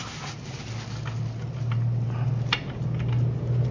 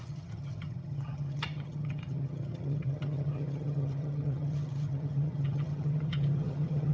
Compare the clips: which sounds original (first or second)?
first